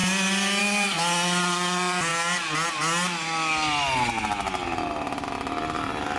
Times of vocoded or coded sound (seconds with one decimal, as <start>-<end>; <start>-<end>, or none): none